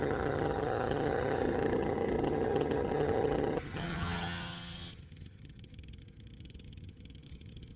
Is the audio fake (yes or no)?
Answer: yes